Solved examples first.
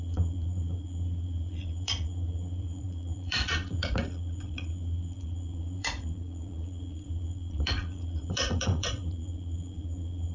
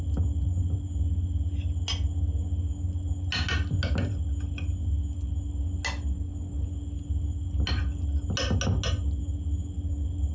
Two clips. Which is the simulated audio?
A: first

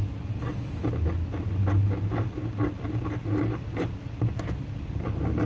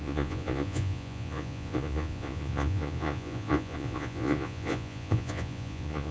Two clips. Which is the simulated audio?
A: second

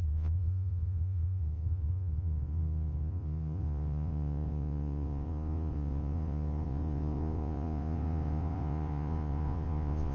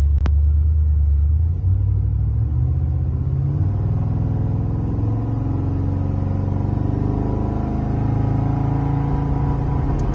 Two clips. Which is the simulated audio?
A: first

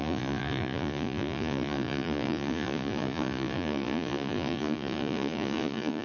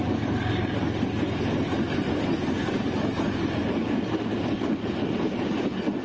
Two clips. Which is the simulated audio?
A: first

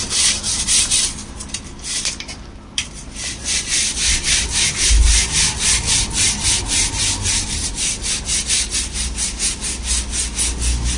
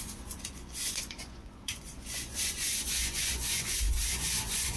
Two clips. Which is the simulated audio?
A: second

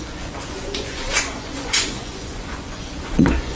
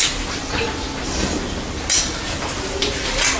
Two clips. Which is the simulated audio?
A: first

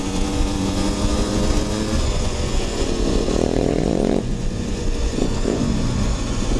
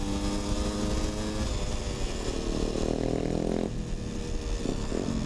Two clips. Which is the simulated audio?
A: first